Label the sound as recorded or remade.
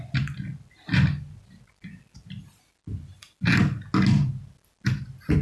recorded